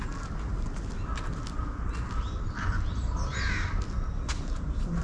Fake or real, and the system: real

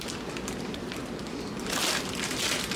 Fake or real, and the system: fake, vocoder, BigVGAN v2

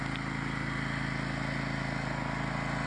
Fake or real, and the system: real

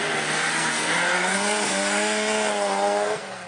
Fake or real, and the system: fake, codec, SNAC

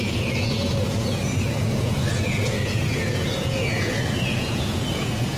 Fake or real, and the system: fake, vocoder, Vocos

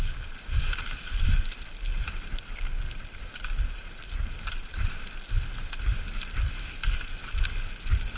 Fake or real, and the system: real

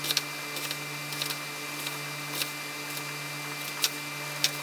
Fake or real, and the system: real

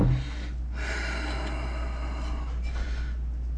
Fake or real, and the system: real